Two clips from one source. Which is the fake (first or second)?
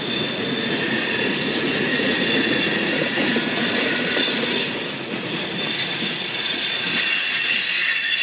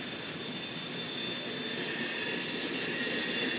first